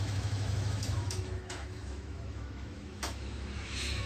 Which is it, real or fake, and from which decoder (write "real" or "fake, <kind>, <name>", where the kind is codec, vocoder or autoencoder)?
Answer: fake, autoencoder, DAC-VAE